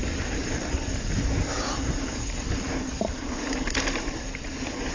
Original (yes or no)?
no